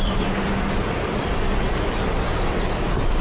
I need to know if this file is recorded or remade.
recorded